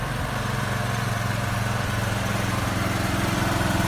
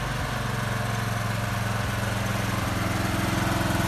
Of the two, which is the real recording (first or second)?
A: second